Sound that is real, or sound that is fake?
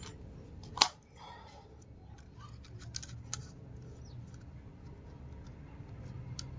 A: real